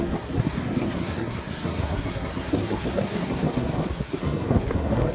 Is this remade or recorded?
remade